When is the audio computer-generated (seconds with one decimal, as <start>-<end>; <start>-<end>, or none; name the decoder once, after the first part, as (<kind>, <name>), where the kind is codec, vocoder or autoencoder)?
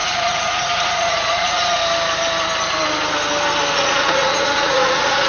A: 0.0-1.8 (vocoder, Vocos); 3.7-5.3